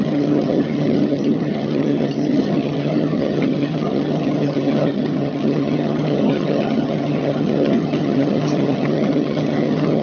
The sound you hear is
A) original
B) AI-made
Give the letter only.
B